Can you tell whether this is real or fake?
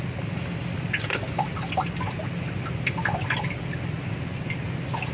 real